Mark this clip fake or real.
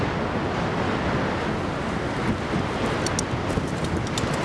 real